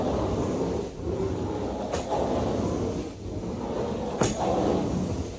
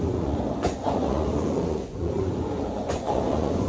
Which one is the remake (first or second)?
second